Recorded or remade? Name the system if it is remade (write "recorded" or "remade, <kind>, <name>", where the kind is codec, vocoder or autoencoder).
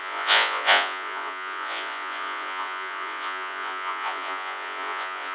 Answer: remade, vocoder, Vocos